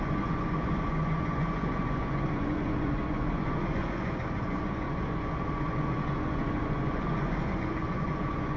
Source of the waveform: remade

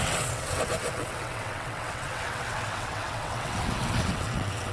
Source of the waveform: remade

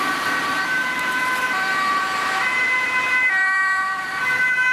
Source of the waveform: remade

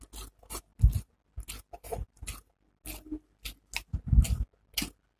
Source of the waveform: recorded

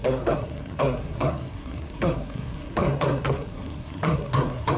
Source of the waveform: remade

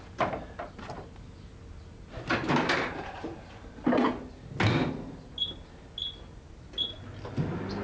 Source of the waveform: recorded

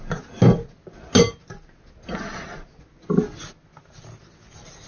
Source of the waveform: recorded